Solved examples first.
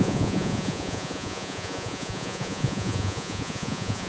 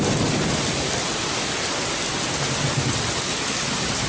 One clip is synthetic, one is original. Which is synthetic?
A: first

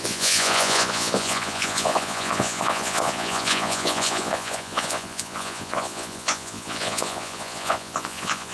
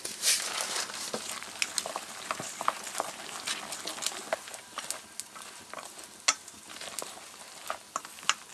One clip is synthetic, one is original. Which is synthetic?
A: first